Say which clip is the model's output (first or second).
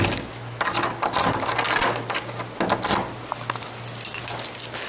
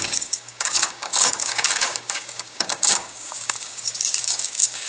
second